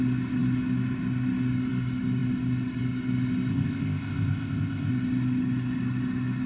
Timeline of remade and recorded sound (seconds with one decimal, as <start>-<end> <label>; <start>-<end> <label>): 0.0-3.5 recorded; 3.5-4.9 remade; 4.9-6.5 recorded